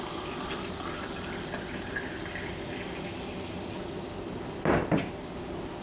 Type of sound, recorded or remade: recorded